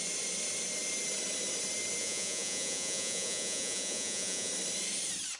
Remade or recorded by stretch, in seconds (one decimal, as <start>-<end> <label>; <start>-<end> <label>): 0.0-2.0 recorded; 2.0-4.5 remade; 4.5-5.4 recorded